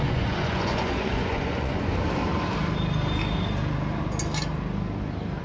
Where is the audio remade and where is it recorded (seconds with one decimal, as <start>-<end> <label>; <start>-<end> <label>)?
0.0-1.9 remade; 1.9-5.4 recorded